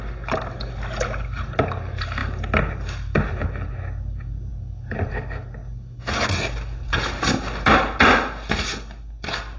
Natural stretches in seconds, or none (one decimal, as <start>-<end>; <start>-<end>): 0.0-9.6

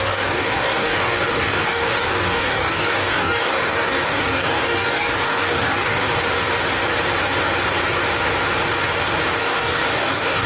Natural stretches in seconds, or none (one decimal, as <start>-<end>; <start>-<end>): 6.1-9.4

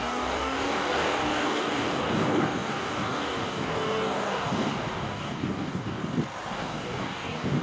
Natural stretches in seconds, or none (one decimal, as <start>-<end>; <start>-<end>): 6.0-6.5

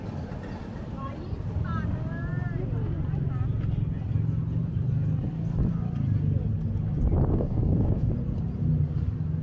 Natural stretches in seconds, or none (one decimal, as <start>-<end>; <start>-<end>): 0.0-7.3; 8.1-9.4

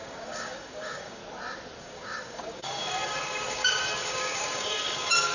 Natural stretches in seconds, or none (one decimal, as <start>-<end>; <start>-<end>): 1.2-1.8